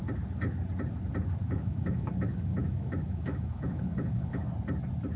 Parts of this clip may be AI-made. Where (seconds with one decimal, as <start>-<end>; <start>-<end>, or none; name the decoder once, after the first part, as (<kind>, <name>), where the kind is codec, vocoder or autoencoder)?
1.4-4.5 (autoencoder, DAC-VAE)